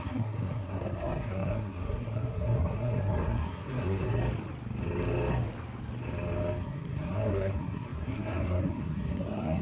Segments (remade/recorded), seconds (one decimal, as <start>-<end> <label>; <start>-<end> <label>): 0.0-4.2 remade; 4.2-6.6 recorded; 6.6-9.6 remade